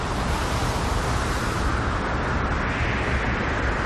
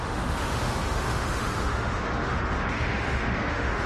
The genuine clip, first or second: first